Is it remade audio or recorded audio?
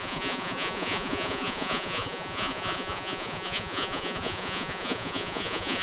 remade